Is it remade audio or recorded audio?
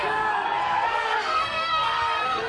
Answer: remade